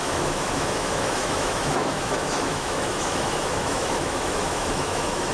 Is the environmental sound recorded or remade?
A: remade